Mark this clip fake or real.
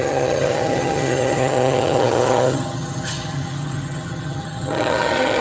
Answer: fake